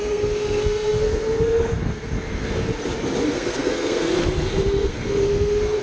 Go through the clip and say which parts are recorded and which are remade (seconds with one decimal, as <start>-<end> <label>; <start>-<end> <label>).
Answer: 0.0-2.7 remade; 2.7-3.3 recorded; 3.3-5.8 remade